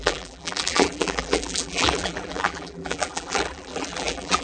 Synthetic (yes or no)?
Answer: yes